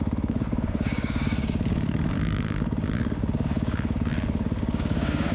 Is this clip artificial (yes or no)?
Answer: yes